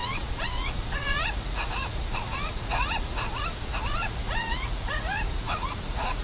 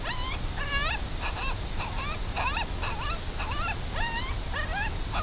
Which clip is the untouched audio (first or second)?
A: second